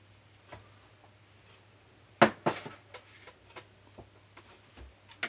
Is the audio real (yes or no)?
yes